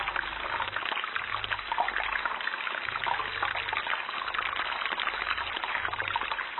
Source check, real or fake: real